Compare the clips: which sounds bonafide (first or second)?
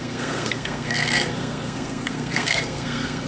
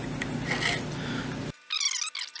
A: second